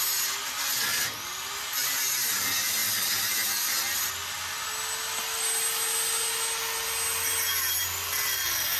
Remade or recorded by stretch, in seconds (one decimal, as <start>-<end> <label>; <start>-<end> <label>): 0.0-8.8 recorded